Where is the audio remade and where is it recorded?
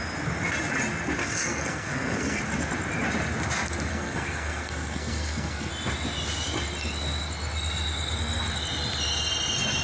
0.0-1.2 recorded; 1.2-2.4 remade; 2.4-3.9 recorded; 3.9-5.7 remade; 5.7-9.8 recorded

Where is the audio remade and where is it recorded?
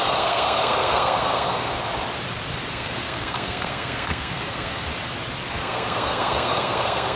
0.0-1.7 remade; 1.7-2.7 recorded; 2.7-4.9 remade; 4.9-5.5 recorded; 5.5-7.2 remade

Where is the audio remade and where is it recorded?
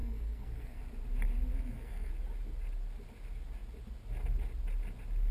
0.0-0.8 remade; 0.8-1.5 recorded; 1.5-2.1 remade; 2.1-5.3 recorded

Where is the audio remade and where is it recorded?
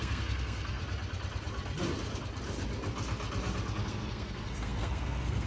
0.0-0.8 remade; 0.8-3.9 recorded; 3.9-5.5 remade